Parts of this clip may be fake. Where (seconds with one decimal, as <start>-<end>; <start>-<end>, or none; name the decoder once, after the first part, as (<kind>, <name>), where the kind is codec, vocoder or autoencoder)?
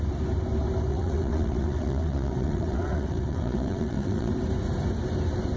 0.9-4.3 (vocoder, WaveNeXt)